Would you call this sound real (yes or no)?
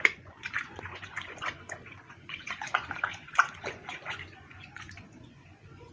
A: no